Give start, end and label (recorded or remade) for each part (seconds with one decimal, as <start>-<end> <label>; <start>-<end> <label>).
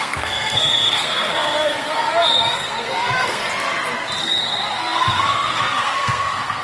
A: 0.0-3.4 remade; 3.4-4.2 recorded; 4.2-6.6 remade